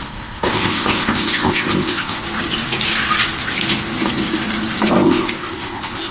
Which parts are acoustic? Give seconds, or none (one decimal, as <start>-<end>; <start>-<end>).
2.2-4.9